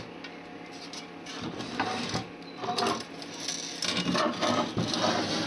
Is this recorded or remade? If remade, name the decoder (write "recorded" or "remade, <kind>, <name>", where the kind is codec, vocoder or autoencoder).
recorded